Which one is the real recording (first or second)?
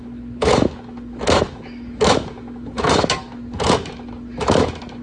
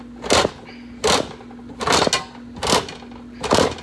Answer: second